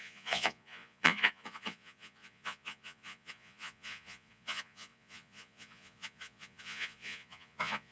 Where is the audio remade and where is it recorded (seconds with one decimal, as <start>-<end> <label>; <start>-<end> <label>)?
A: 0.0-7.9 remade

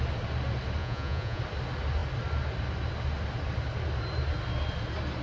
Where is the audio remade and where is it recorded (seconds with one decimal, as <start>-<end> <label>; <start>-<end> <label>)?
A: 0.0-0.8 recorded; 0.8-1.4 remade; 1.4-5.2 recorded